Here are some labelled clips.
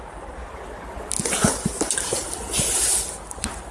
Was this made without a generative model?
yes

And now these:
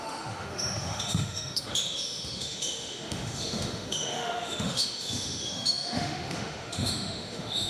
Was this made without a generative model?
no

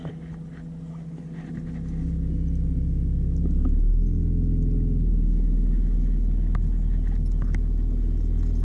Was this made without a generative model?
yes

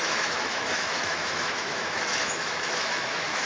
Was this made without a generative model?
no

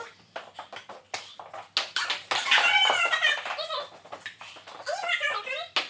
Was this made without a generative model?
yes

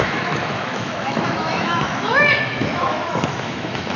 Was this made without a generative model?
no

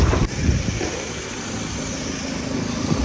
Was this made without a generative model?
yes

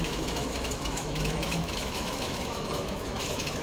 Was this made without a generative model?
no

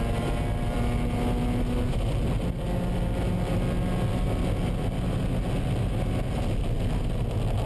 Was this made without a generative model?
yes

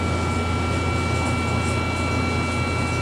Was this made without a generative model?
yes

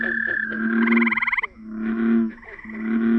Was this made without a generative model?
no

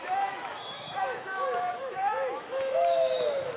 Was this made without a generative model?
no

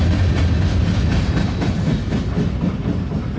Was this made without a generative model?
yes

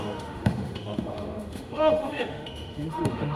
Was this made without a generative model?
no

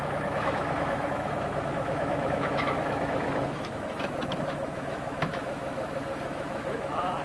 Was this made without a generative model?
no